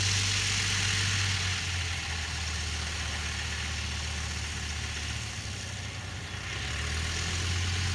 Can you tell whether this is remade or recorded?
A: recorded